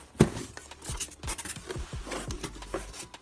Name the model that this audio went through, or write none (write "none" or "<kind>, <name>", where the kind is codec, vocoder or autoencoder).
none